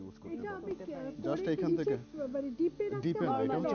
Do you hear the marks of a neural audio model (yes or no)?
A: no